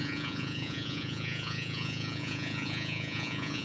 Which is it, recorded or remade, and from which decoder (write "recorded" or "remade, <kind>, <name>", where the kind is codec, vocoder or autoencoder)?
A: remade, vocoder, Vocos